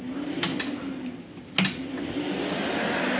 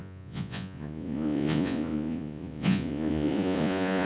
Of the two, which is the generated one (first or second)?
second